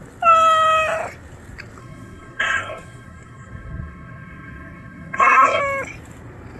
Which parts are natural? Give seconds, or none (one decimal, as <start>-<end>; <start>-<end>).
0.0-1.8; 5.6-6.6